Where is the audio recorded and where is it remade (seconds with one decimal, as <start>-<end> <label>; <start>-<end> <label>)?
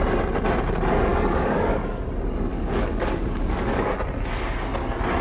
0.0-1.1 recorded; 1.1-2.0 remade; 2.0-2.5 recorded; 2.5-3.9 remade; 3.9-5.2 recorded